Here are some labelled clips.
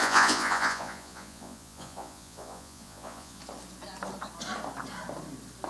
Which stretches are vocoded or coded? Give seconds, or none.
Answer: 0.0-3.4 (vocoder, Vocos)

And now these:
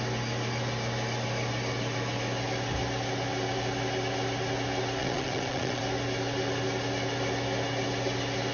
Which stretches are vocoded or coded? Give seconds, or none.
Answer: 5.0-5.8 (vocoder, Vocos)

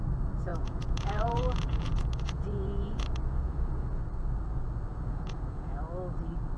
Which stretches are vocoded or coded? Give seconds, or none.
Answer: 0.5-4.0 (vocoder, Vocos); 4.9-5.8

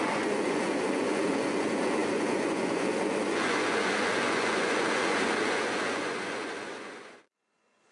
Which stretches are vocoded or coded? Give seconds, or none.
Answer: 0.0-7.9 (vocoder, Vocos)